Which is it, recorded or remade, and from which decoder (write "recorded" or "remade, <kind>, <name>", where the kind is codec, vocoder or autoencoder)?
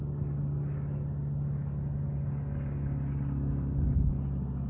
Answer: recorded